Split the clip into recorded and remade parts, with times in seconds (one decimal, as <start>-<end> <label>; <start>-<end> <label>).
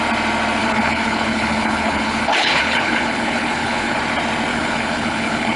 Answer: 0.0-0.6 recorded; 0.6-4.0 remade; 4.0-4.5 recorded; 4.5-5.6 remade